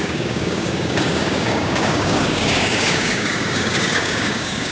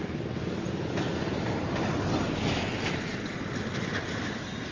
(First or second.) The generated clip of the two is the first